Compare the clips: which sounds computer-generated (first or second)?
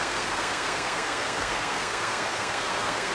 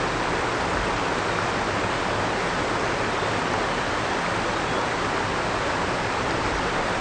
first